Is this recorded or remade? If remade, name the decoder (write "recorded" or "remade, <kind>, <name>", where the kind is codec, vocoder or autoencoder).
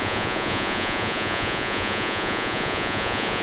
remade, vocoder, Vocos